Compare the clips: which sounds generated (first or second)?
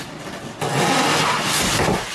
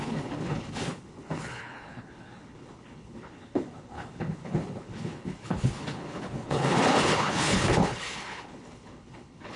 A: second